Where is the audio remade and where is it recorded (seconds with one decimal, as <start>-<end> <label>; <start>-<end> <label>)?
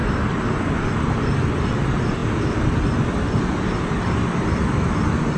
0.0-5.4 recorded